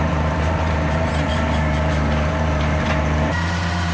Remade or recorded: remade